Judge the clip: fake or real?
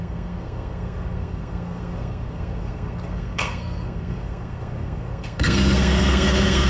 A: fake